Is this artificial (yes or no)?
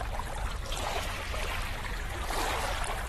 no